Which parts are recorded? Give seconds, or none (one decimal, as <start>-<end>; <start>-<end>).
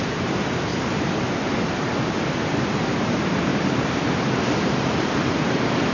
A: none